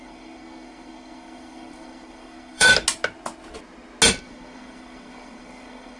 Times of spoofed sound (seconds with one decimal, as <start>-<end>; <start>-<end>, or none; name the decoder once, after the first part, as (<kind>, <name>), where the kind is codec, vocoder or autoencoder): 0.0-2.7 (codec, SNAC); 4.2-6.0